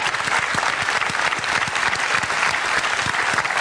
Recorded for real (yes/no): yes